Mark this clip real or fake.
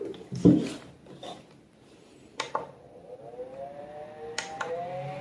real